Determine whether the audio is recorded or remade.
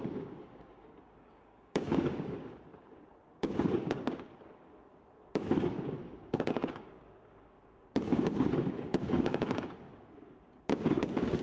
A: remade